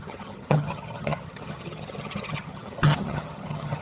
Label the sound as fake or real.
fake